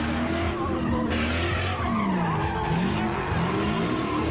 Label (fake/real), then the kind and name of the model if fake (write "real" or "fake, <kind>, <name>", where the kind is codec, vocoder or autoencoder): real